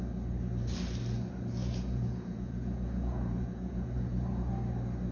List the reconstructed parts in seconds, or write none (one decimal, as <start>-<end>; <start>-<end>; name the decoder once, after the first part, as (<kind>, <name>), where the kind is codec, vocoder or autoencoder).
1.6-4.5 (vocoder, Vocos)